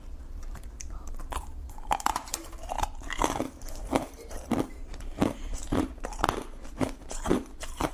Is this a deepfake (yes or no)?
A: yes